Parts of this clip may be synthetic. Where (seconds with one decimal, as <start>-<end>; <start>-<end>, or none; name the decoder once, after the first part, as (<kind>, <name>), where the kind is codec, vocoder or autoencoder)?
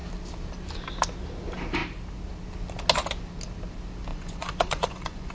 4.1-5.3 (vocoder, Vocos)